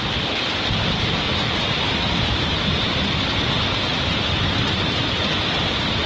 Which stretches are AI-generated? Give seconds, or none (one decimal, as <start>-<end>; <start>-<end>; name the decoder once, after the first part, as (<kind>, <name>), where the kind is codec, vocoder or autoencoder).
none